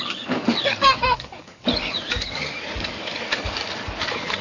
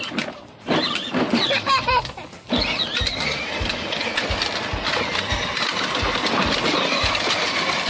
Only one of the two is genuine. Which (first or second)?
second